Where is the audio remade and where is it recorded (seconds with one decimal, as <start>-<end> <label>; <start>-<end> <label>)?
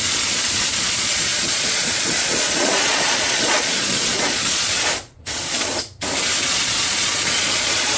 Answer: 0.0-5.7 remade; 5.7-6.5 recorded; 6.5-8.0 remade